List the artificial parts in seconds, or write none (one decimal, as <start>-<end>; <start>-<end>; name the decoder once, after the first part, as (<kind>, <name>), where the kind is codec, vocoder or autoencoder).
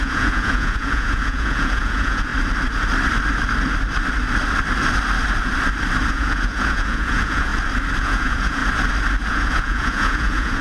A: 0.0-2.3 (vocoder, Vocos); 6.1-7.5; 8.0-8.6; 9.3-10.6